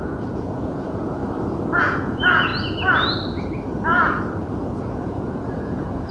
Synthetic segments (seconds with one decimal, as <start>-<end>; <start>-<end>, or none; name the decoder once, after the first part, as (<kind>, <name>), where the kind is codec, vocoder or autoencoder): 0.0-1.2 (vocoder, Vocos); 1.8-2.5; 4.8-6.1